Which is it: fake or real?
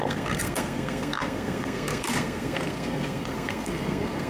fake